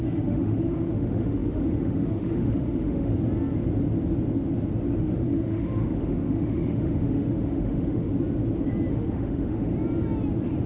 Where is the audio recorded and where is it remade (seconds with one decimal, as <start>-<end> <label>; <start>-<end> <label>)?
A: 0.0-3.1 remade; 3.1-5.0 recorded; 5.0-8.1 remade; 8.1-8.9 recorded; 8.9-9.7 remade; 9.7-10.7 recorded